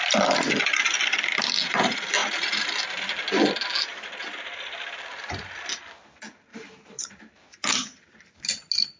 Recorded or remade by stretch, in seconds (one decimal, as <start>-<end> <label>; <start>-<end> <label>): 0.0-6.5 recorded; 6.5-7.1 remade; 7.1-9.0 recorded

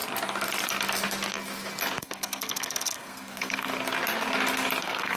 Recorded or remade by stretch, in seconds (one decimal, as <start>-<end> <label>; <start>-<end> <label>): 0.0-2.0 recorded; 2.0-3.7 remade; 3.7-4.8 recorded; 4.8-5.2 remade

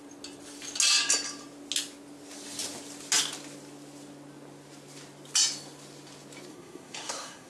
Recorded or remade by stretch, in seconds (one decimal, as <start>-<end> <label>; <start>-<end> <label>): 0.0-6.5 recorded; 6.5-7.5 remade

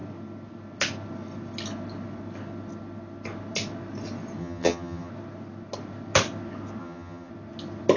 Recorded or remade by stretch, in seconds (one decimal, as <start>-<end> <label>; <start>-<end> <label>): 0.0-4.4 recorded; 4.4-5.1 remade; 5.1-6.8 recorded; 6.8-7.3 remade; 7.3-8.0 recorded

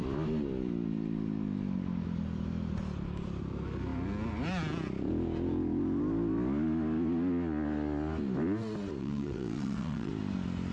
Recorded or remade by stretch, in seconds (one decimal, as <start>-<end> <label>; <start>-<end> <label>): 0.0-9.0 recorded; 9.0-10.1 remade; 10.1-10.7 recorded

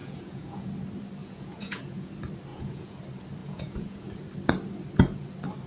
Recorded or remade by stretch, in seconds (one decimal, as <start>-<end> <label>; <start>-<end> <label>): 0.0-0.7 remade; 0.7-1.2 recorded; 1.2-2.1 remade; 2.1-2.5 recorded; 2.5-3.0 remade; 3.0-3.4 recorded; 3.4-4.1 remade; 4.1-5.7 recorded

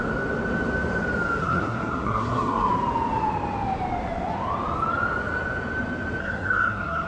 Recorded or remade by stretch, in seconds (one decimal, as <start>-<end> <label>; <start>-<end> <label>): 0.0-1.4 recorded; 1.4-2.7 remade; 2.7-6.2 recorded; 6.2-7.1 remade

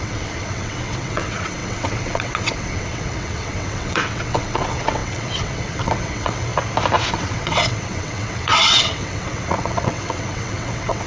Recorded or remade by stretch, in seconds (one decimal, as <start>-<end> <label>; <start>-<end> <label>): 0.0-6.5 remade; 6.5-7.1 recorded; 7.1-11.1 remade